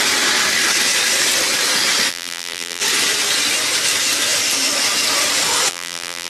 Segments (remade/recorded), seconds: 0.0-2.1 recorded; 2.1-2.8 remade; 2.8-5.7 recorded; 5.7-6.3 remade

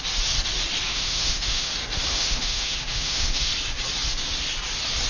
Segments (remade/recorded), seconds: 0.0-0.9 recorded; 0.9-1.7 remade; 1.7-2.1 recorded; 2.1-3.5 remade; 3.5-5.1 recorded

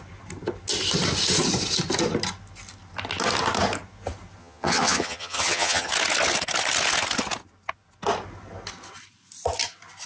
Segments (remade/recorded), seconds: 0.0-4.4 recorded; 4.4-5.9 remade; 5.9-10.1 recorded

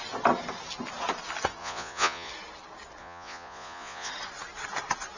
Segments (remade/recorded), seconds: 0.0-1.6 recorded; 1.6-2.3 remade; 2.3-3.0 recorded; 3.0-4.1 remade; 4.1-5.2 recorded

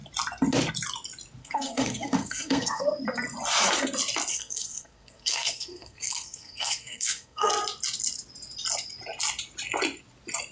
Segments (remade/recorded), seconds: 0.0-1.4 recorded; 1.4-3.0 remade; 3.0-4.3 recorded; 4.3-7.5 remade; 7.5-10.5 recorded

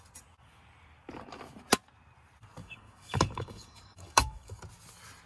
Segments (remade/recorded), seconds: 0.0-2.6 recorded; 2.6-4.6 remade; 4.6-5.3 recorded

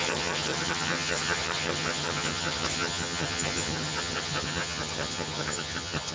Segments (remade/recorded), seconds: 0.0-6.1 remade